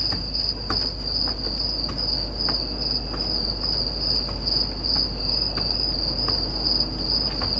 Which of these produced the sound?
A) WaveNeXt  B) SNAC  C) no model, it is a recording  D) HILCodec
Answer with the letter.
C